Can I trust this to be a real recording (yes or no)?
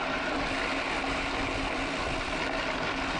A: yes